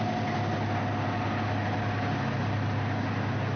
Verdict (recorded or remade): recorded